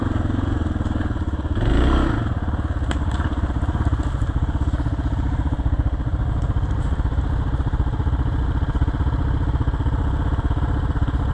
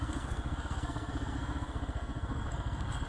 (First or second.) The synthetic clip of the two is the second